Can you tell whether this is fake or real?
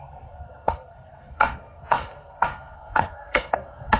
fake